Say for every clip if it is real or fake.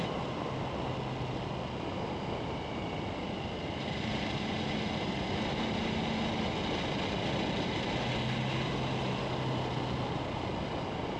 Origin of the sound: real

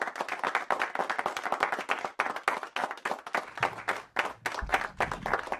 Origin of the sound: real